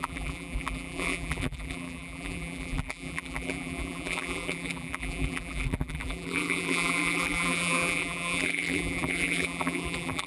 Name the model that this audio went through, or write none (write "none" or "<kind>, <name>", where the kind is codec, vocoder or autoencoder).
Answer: vocoder, BigVGAN v2